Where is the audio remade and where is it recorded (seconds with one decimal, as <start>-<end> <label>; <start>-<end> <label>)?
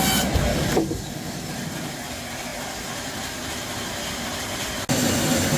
0.0-0.5 recorded; 0.5-1.5 remade; 1.5-5.6 recorded